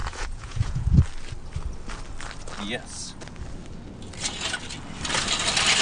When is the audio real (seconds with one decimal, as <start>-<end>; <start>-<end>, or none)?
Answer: 1.0-5.8